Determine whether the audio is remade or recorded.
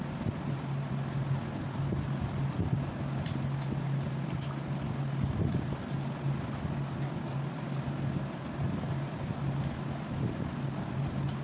recorded